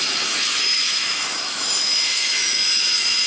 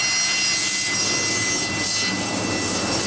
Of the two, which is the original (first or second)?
second